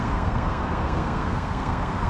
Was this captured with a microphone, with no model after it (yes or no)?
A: no